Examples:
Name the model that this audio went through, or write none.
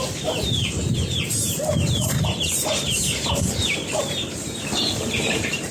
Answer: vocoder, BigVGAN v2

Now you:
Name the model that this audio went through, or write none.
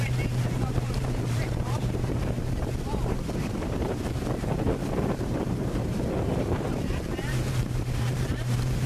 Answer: vocoder, BigVGAN v2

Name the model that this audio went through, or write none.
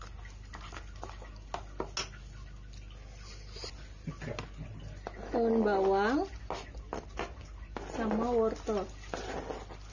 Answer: none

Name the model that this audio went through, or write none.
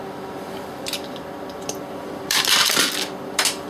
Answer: vocoder, BigVGAN v2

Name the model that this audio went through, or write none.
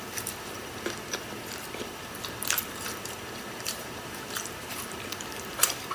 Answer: vocoder, BigVGAN v2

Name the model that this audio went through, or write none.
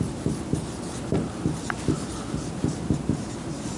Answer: none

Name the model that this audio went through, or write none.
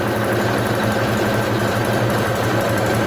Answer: none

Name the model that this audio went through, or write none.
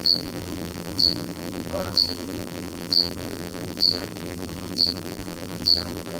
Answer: vocoder, BigVGAN v2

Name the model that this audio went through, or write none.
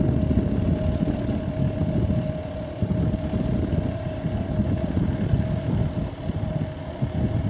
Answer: none